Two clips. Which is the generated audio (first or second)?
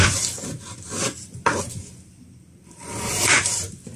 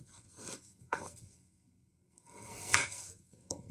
second